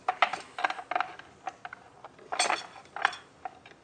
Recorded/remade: recorded